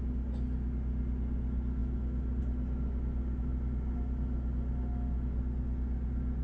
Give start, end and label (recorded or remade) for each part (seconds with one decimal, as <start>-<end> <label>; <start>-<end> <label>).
0.0-6.4 recorded